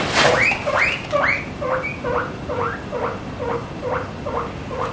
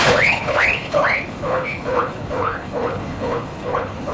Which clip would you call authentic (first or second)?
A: first